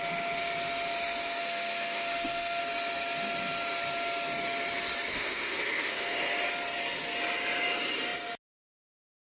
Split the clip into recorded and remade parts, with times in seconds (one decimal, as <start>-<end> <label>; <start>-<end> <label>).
0.0-1.4 recorded; 1.4-2.6 remade; 2.6-5.1 recorded; 5.1-6.3 remade; 6.3-9.4 recorded